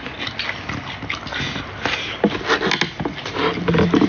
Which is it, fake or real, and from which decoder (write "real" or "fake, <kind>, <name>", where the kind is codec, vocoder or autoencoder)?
real